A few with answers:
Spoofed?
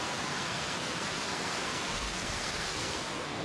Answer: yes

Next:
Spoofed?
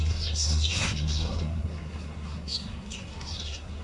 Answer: yes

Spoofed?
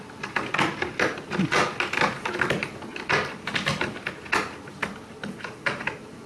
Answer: no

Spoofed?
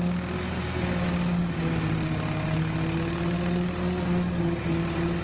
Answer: no